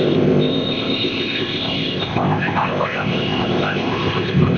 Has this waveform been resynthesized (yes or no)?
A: yes